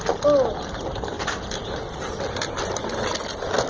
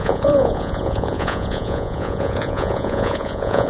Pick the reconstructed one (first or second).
second